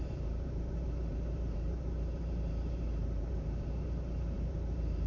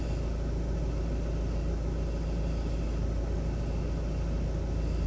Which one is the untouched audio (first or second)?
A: second